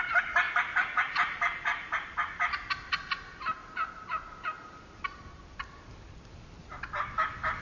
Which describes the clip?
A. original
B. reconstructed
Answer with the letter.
A